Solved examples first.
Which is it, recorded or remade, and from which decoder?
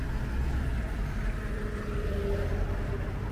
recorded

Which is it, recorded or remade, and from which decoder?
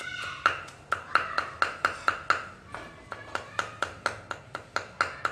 recorded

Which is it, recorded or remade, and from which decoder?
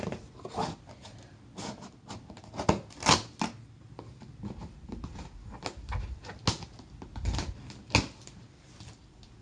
recorded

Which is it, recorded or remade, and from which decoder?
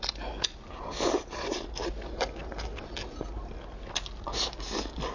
recorded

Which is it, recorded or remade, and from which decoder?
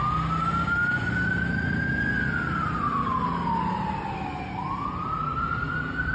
recorded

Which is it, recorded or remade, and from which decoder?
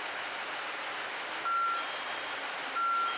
recorded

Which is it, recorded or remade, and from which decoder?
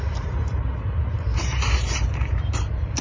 remade, vocoder, BigVGAN v2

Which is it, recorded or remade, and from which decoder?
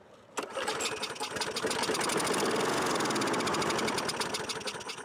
recorded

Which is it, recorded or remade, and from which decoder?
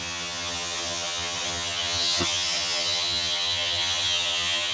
remade, vocoder, HiFi-GAN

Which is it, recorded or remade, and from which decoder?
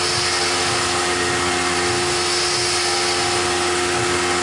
recorded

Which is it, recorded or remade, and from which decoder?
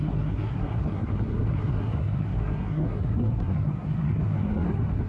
remade, codec, SNAC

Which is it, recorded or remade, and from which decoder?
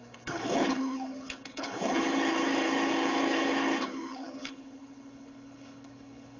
remade, codec, HILCodec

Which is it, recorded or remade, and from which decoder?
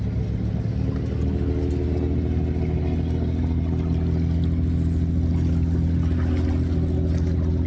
recorded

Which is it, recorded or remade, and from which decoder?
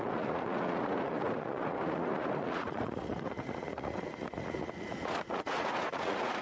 remade, vocoder, Vocos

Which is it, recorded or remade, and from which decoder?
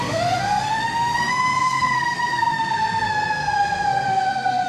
remade, codec, SNAC